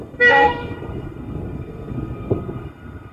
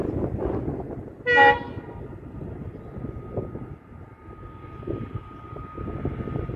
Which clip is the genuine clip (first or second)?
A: second